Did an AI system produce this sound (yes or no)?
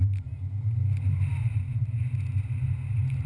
no